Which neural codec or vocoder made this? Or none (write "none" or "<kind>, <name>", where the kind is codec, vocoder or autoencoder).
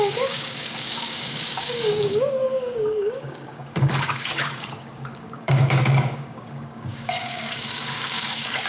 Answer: codec, DAC